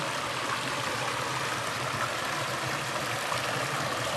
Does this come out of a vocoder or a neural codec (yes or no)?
no